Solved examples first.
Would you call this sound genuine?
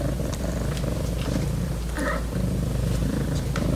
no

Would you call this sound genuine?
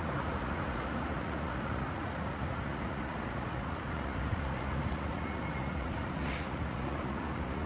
no